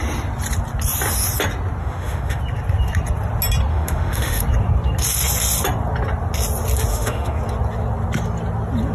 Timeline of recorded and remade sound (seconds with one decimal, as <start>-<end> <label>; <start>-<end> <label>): 0.0-1.8 recorded; 1.8-2.4 remade; 2.4-3.7 recorded; 3.7-4.4 remade; 4.4-6.9 recorded; 6.9-7.4 remade; 7.4-8.9 recorded